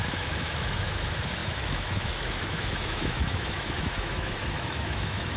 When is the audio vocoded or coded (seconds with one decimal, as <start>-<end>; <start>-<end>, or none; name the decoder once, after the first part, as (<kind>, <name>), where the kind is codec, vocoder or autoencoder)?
0.0-5.4 (autoencoder, DAC-VAE)